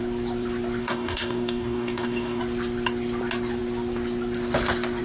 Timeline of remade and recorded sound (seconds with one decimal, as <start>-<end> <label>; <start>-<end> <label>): 0.0-0.8 recorded; 0.8-2.4 remade; 2.4-5.0 recorded